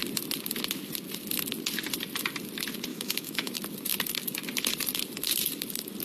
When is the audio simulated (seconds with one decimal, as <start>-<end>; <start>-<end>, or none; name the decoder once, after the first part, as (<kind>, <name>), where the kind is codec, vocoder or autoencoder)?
2.9-3.5 (autoencoder, DAC-VAE)

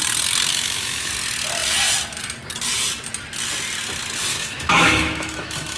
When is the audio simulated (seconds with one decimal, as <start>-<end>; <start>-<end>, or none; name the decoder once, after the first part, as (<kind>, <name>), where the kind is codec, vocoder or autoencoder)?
0.5-1.1 (autoencoder, DAC-VAE); 4.3-5.8

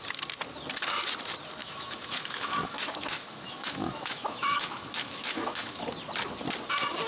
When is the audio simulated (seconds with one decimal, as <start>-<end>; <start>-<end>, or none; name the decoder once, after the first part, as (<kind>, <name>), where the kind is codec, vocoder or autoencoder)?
1.6-5.9 (autoencoder, DAC-VAE)

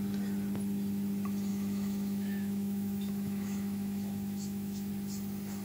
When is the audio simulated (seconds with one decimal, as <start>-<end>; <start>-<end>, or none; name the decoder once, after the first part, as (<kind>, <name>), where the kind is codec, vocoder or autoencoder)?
1.5-4.9 (autoencoder, DAC-VAE)

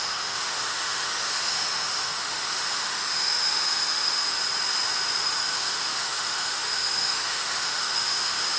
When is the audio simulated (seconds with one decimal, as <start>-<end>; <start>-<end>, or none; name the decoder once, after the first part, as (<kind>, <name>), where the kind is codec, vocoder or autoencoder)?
0.0-4.4 (autoencoder, DAC-VAE); 5.1-8.6